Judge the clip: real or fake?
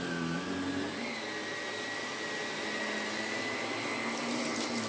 real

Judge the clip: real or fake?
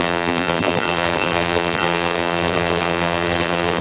fake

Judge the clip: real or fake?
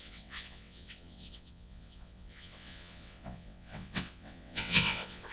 fake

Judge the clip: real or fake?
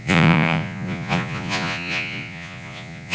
fake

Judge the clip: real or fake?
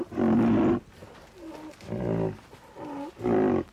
real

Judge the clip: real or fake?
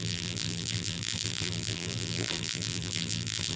fake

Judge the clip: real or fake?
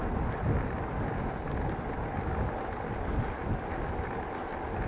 real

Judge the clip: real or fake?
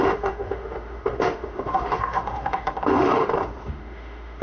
fake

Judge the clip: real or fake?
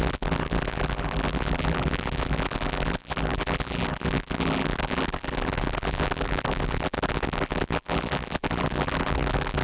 fake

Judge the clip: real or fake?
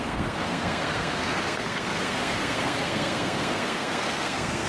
fake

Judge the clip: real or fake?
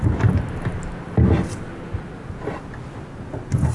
real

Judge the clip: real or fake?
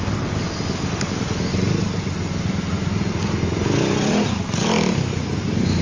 real